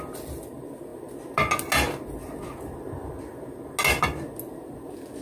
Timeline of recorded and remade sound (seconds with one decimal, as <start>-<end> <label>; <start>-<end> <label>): 0.0-5.2 recorded